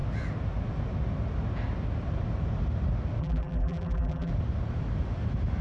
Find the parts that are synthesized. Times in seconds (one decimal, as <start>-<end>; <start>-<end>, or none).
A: 3.2-4.3